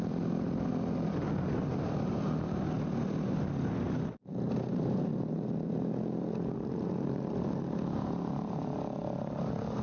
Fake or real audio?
real